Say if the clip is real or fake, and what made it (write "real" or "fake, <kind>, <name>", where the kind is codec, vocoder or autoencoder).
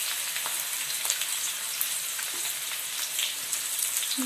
real